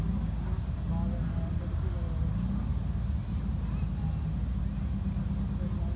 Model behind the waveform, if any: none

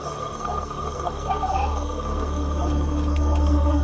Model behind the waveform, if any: codec, SNAC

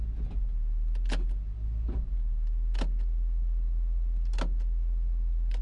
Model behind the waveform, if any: none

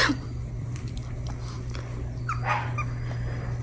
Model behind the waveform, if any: none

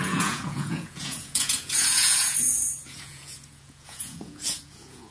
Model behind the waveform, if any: vocoder, Vocos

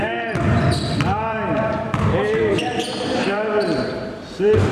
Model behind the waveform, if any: vocoder, BigVGAN v2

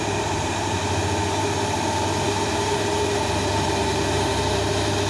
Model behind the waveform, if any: vocoder, BigVGAN v2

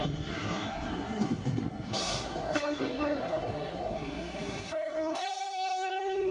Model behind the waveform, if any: codec, SNAC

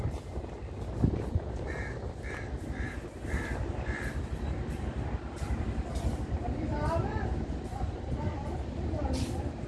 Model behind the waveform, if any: none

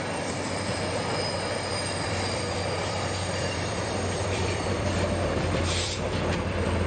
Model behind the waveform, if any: vocoder, BigVGAN v2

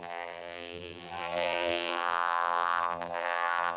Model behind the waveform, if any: vocoder, BigVGAN v2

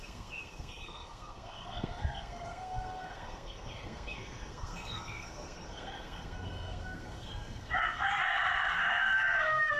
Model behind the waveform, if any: codec, SNAC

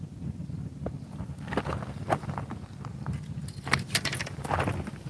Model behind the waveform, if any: none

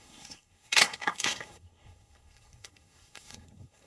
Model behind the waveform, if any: codec, SNAC